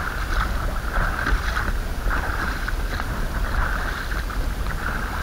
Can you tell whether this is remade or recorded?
recorded